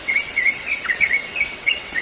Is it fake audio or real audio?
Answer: fake